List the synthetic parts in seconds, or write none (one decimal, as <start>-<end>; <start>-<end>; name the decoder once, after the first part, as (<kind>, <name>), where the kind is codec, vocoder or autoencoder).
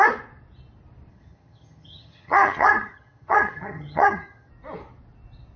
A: 1.1-4.5 (vocoder, HiFi-GAN)